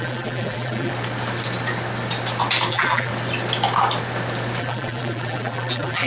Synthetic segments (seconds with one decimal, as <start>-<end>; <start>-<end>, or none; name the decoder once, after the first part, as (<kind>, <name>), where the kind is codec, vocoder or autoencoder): 0.0-0.9 (vocoder, BigVGAN v2); 2.7-3.1; 4.6-6.1